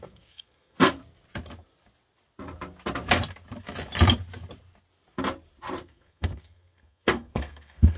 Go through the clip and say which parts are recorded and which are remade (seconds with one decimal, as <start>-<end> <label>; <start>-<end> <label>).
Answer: 0.0-1.0 remade; 1.0-5.8 recorded; 5.8-8.0 remade